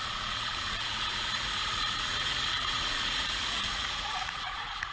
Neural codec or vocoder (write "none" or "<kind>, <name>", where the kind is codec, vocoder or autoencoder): vocoder, Vocos